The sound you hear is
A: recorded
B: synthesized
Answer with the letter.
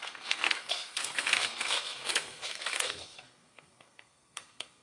B